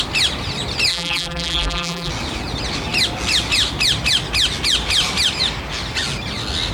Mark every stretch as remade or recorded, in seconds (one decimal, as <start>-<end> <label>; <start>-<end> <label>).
0.0-0.9 recorded; 0.9-2.1 remade; 2.1-6.7 recorded